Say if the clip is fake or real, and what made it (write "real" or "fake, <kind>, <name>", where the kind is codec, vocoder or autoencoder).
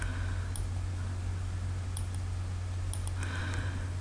real